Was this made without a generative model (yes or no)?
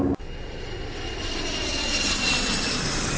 yes